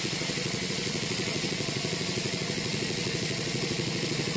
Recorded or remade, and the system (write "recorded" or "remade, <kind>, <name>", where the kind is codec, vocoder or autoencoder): remade, vocoder, Vocos